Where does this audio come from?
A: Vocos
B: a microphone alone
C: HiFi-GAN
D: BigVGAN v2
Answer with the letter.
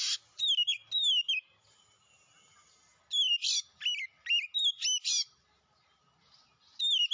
B